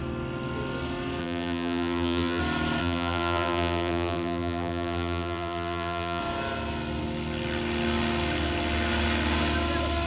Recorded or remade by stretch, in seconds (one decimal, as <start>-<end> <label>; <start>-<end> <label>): 0.0-1.2 recorded; 1.2-2.4 remade; 2.4-2.8 recorded; 2.8-6.2 remade; 6.2-10.1 recorded